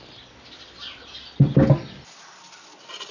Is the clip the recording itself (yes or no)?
yes